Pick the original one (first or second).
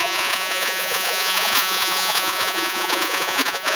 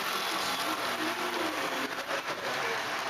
second